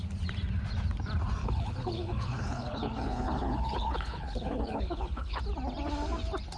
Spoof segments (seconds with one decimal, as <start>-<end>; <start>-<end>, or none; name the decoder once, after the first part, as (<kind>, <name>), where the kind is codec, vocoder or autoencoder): 1.4-5.4 (codec, HILCodec)